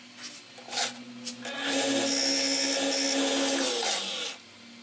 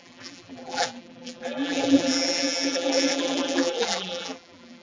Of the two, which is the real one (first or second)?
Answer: first